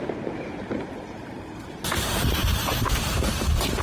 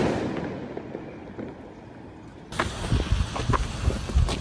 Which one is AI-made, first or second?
first